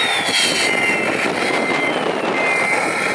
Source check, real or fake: real